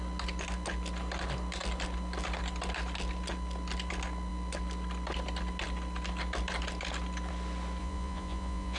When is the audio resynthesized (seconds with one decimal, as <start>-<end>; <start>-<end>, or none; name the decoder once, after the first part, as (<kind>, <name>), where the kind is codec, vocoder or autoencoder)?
7.8-8.8 (vocoder, Vocos)